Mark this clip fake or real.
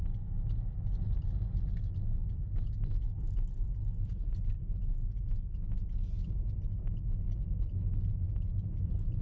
real